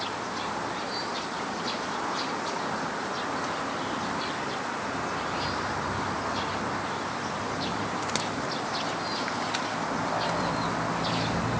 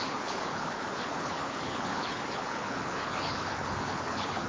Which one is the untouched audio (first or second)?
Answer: first